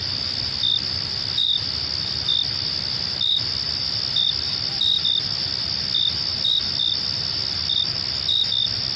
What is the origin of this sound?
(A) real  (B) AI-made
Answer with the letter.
A